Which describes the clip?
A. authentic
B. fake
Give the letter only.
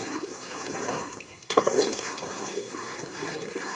B